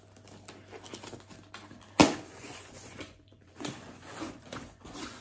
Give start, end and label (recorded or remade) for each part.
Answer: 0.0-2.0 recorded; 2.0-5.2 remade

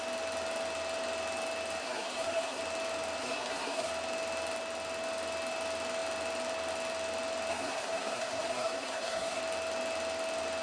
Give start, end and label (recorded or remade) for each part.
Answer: 0.0-1.8 recorded; 1.8-2.6 remade; 2.6-3.2 recorded; 3.2-3.9 remade; 3.9-7.5 recorded; 7.5-9.4 remade; 9.4-10.6 recorded

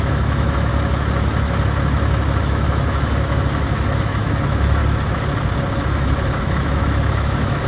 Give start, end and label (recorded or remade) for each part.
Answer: 0.0-0.7 remade; 0.7-2.4 recorded; 2.4-4.8 remade; 4.8-5.7 recorded; 5.7-7.7 remade

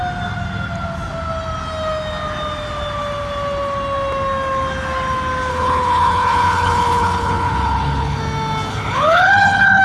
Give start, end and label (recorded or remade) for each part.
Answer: 0.0-5.5 recorded; 5.5-8.2 remade; 8.2-8.7 recorded; 8.7-9.8 remade

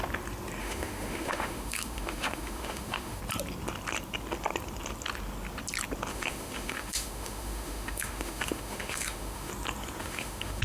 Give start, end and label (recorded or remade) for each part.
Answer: 0.0-0.6 recorded; 0.6-3.2 remade; 3.2-6.1 recorded; 6.1-9.5 remade; 9.5-10.0 recorded; 10.0-10.6 remade

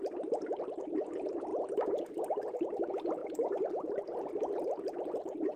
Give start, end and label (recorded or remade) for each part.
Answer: 0.0-5.6 recorded

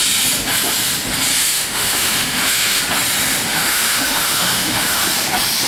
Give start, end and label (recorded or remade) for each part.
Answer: 0.0-1.4 recorded; 1.4-2.8 remade; 2.8-3.5 recorded; 3.5-5.0 remade; 5.0-5.7 recorded

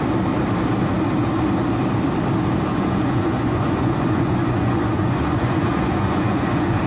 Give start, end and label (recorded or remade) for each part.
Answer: 0.0-2.7 recorded; 2.7-6.9 remade